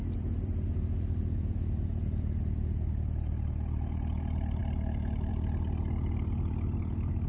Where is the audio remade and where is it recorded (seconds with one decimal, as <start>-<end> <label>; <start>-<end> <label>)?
0.0-7.3 recorded